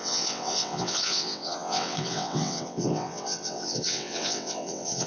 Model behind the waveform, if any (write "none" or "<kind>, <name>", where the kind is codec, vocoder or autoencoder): vocoder, WaveNeXt